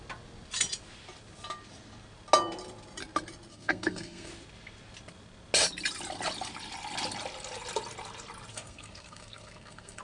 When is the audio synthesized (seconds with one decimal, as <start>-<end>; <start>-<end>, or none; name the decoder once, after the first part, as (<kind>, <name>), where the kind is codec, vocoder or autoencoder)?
3.5-4.3 (codec, SNAC); 8.5-10.0